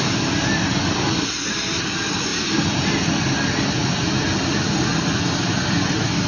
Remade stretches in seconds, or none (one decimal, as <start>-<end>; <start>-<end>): none